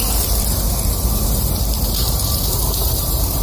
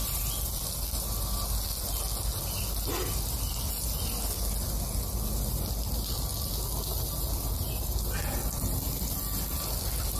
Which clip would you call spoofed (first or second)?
first